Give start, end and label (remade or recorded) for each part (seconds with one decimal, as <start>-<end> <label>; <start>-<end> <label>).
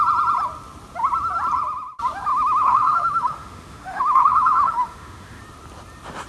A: 0.0-2.3 recorded; 2.3-5.4 remade; 5.4-6.3 recorded